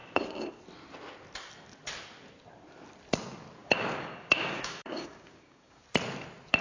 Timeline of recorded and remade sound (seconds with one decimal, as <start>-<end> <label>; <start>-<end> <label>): 0.0-0.6 remade; 0.6-3.6 recorded; 3.6-5.8 remade; 5.8-6.6 recorded